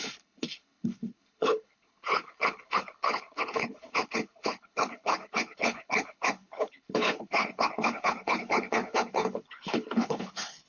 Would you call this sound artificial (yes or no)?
yes